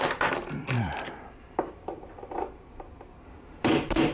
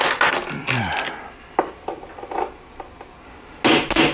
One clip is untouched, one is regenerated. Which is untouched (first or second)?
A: second